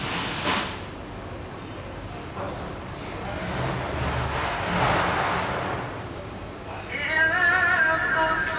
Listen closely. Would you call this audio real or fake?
real